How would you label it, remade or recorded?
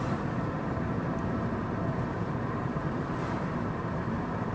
remade